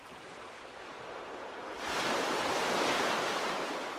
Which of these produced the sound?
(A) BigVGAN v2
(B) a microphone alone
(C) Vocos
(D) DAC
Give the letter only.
A